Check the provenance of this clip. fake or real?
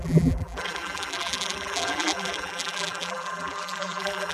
fake